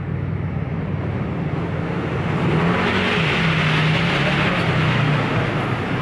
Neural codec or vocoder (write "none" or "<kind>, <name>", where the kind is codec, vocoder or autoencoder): none